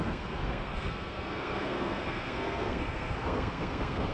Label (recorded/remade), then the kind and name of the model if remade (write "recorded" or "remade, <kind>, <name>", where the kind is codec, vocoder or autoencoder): remade, codec, SNAC